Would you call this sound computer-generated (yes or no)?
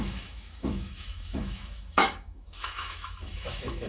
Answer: yes